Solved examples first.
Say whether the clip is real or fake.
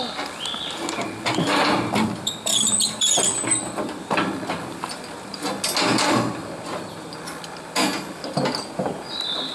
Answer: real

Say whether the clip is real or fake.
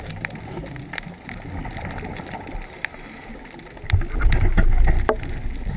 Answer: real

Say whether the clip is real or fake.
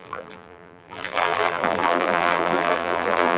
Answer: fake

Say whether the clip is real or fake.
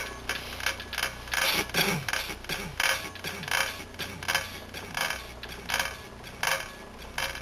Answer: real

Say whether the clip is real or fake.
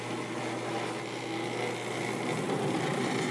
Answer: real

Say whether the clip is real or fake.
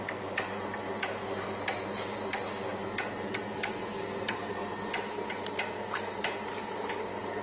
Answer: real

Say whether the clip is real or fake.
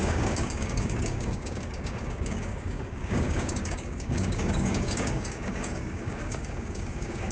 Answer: fake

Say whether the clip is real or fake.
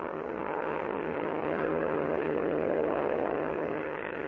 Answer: fake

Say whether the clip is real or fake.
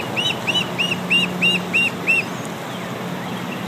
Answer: real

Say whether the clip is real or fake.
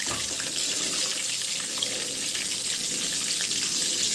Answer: real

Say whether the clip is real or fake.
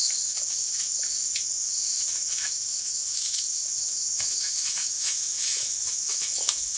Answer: fake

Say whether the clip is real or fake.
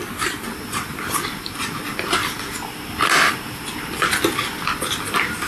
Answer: real